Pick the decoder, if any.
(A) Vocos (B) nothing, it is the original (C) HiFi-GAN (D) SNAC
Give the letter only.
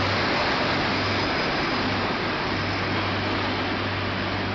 B